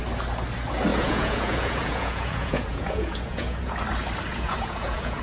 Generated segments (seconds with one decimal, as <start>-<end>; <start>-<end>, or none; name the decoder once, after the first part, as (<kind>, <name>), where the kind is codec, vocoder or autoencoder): 0.9-3.7 (vocoder, Vocos); 4.3-5.2